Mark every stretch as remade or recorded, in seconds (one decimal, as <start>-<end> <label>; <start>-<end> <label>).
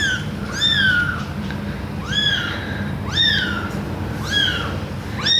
0.0-2.0 recorded; 2.0-3.5 remade; 3.5-5.4 recorded